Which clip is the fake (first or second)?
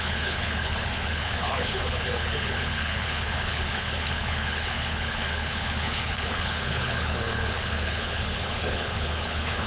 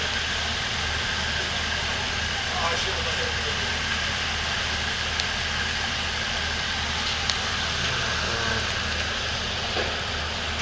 first